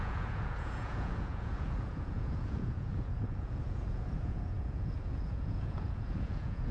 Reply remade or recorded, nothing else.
remade